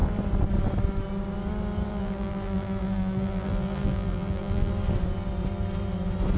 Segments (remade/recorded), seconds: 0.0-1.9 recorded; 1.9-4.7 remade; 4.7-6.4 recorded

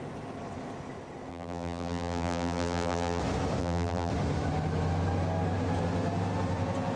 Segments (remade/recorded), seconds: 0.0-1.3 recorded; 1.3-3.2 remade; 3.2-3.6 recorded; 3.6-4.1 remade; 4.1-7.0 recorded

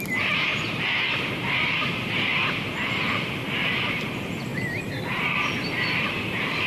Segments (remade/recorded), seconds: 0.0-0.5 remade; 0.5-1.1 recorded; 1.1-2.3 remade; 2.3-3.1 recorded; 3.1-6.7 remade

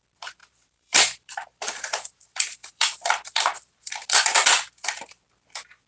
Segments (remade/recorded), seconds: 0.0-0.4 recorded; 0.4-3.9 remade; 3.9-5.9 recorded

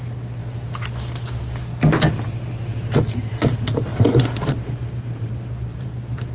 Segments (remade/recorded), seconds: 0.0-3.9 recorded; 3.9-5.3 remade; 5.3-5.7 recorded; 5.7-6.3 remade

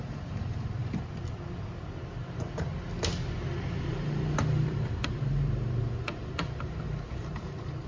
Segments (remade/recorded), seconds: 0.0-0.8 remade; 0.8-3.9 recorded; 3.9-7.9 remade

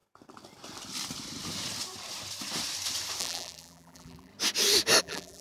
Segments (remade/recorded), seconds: 0.0-3.2 recorded; 3.2-4.3 remade; 4.3-5.0 recorded; 5.0-5.4 remade

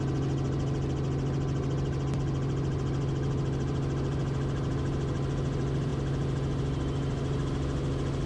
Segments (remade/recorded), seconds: 0.0-8.3 recorded